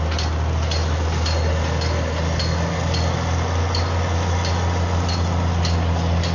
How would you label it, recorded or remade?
recorded